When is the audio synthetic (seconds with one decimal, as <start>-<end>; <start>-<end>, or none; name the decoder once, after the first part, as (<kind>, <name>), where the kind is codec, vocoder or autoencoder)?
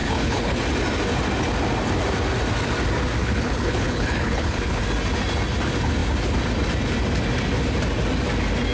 0.0-0.6 (codec, HILCodec); 3.2-4.8